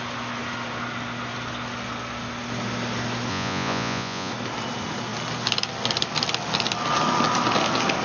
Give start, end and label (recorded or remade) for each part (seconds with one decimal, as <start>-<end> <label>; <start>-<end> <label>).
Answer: 0.0-3.3 recorded; 3.3-4.3 remade; 4.3-8.0 recorded